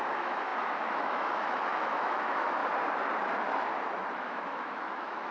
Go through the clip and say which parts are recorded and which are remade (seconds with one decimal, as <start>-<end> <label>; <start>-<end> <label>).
0.0-2.6 remade; 2.6-4.1 recorded; 4.1-5.3 remade